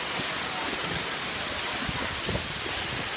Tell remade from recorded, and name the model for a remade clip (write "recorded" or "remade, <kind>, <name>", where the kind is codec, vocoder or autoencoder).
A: recorded